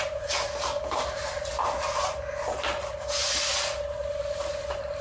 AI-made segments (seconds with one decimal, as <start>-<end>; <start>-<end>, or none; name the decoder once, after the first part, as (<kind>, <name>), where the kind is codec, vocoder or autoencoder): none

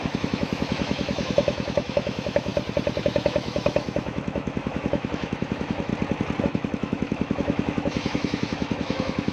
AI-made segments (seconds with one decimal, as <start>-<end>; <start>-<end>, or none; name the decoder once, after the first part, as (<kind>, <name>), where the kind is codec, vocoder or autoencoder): 0.0-2.5 (autoencoder, DAC-VAE); 3.0-5.9; 6.4-9.3

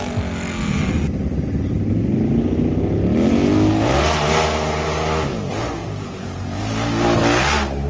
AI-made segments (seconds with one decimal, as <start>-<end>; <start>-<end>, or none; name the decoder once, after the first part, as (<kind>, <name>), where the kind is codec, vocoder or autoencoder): 5.8-6.6 (vocoder, BigVGAN v2)

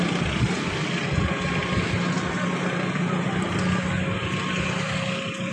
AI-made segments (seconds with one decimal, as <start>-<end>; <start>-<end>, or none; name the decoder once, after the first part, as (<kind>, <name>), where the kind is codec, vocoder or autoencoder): none

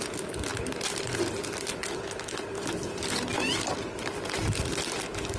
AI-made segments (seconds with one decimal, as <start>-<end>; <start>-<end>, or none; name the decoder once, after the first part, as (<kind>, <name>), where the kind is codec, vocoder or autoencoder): none

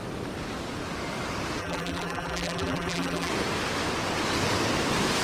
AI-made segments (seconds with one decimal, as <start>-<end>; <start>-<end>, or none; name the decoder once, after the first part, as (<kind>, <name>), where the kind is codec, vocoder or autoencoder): 1.6-3.3 (vocoder, BigVGAN v2)